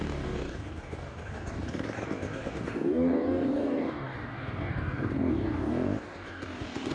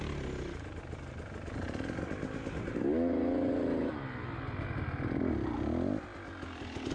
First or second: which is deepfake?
first